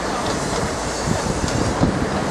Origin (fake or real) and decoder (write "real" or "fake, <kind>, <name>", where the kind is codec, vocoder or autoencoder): fake, vocoder, BigVGAN v2